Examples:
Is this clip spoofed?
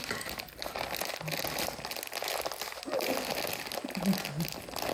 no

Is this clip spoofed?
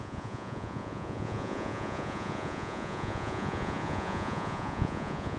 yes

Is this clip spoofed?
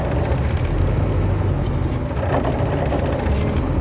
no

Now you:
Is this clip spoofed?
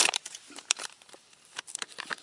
yes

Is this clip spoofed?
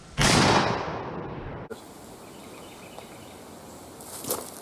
no